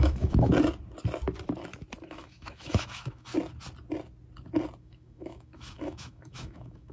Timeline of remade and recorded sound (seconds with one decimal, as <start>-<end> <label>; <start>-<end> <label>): 0.0-0.5 remade; 0.5-2.1 recorded; 2.1-3.3 remade; 3.3-4.8 recorded; 4.8-6.9 remade